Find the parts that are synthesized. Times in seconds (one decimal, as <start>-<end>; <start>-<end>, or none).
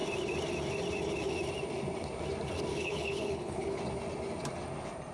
2.7-3.8